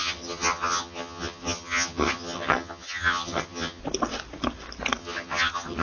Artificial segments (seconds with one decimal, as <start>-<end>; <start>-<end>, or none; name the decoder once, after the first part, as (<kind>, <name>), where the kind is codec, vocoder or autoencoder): 0.0-3.8 (vocoder, HiFi-GAN); 5.0-5.8